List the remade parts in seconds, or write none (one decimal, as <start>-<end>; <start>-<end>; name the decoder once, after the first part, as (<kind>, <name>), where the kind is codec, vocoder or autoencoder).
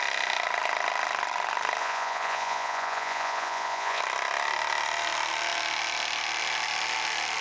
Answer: 1.8-4.0 (vocoder, Vocos)